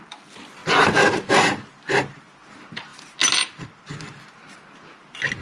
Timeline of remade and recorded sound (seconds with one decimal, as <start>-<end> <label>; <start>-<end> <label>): 0.0-5.4 recorded